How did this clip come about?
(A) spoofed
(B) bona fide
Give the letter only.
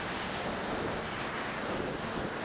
B